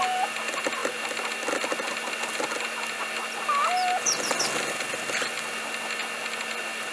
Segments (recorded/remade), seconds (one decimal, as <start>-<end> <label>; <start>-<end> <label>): 0.0-6.9 recorded